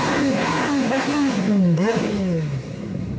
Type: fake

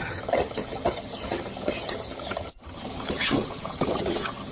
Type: fake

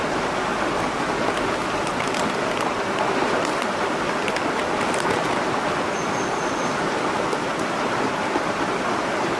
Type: real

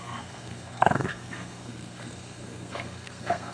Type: fake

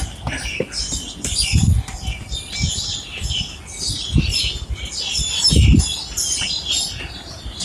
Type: real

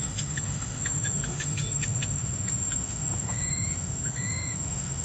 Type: fake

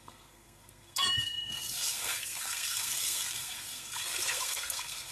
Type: fake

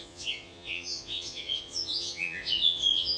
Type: fake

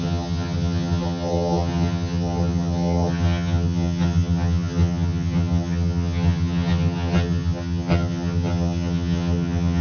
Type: fake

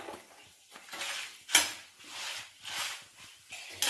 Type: real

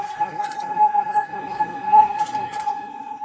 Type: fake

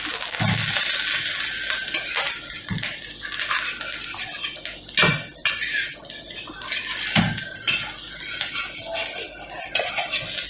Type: real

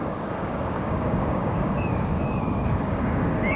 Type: fake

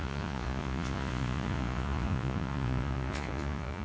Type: fake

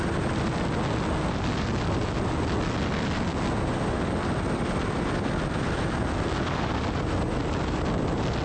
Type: real